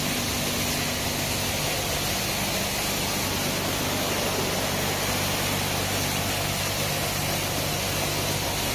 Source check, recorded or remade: recorded